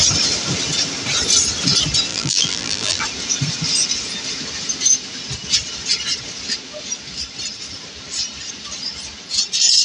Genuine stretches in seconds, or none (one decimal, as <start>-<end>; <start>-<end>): 0.0-2.1; 3.0-9.8